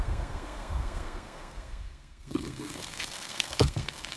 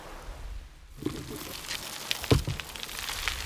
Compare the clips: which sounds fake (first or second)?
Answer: first